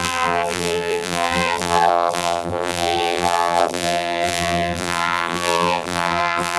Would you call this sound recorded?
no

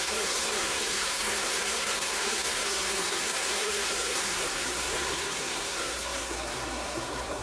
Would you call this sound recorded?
no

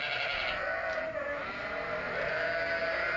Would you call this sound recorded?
yes